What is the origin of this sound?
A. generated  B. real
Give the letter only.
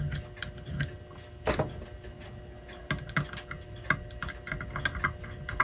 B